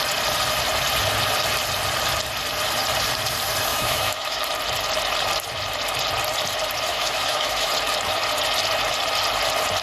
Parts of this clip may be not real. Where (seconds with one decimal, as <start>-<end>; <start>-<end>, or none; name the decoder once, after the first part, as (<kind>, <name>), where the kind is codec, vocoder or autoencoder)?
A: 3.7-4.4 (autoencoder, DAC-VAE); 6.9-7.7